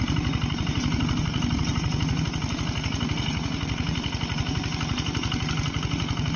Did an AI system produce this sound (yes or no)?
no